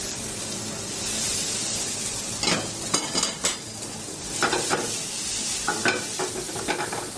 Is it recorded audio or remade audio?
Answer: recorded